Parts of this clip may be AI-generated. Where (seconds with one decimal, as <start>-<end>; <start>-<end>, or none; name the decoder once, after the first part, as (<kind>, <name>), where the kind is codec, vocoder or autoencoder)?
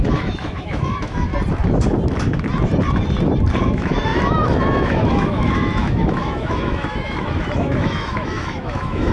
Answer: 0.0-1.3 (autoencoder, DAC-VAE); 3.6-9.1